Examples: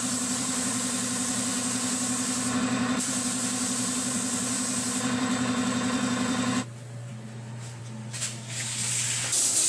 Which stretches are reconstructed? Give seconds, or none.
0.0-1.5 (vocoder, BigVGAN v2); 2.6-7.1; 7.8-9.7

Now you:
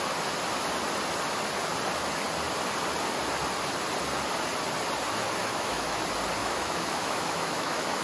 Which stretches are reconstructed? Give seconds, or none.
5.4-6.0 (autoencoder, DAC-VAE); 6.4-8.0

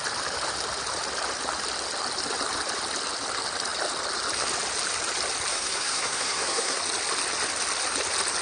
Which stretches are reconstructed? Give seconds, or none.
5.5-6.8 (codec, SNAC)

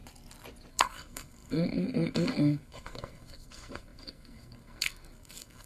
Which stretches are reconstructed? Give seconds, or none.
0.7-5.7 (codec, SNAC)

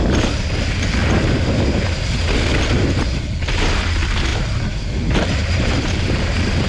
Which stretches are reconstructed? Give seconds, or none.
4.3-6.0 (vocoder, BigVGAN v2)

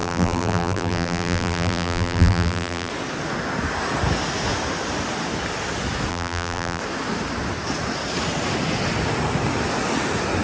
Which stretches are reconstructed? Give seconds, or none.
0.0-2.9 (vocoder, BigVGAN v2); 6.1-6.8